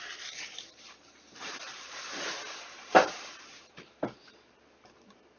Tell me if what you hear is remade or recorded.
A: remade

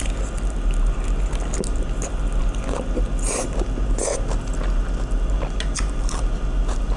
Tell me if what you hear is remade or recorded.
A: recorded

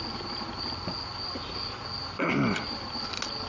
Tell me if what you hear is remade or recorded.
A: recorded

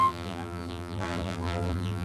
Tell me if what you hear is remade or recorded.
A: remade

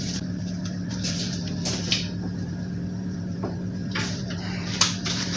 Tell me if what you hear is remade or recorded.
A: remade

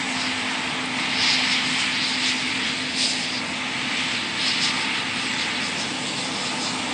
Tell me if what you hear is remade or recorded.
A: recorded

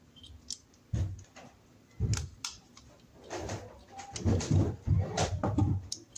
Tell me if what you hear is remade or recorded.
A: recorded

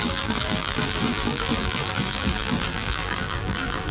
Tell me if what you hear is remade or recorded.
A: remade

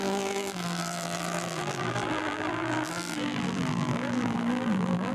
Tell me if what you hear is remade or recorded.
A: remade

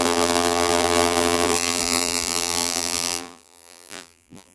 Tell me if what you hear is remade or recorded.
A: remade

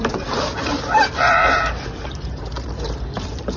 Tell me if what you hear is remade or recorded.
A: remade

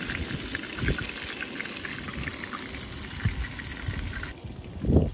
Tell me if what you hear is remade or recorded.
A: recorded